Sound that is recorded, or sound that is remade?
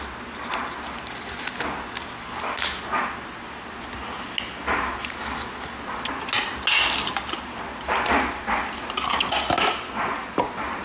recorded